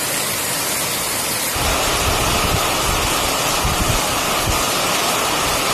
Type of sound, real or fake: real